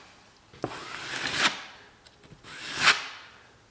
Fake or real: real